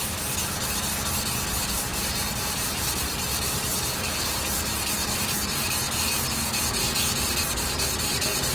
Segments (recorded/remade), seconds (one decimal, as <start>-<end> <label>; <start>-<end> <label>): 0.0-1.9 recorded; 1.9-2.9 remade; 2.9-3.3 recorded; 3.3-6.1 remade; 6.1-8.5 recorded